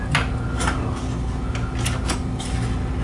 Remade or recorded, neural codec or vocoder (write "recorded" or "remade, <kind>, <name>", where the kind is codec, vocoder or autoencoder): recorded